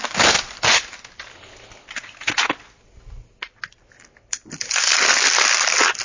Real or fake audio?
real